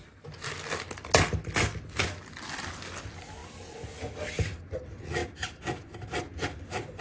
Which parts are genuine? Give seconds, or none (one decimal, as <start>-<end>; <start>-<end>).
0.0-7.0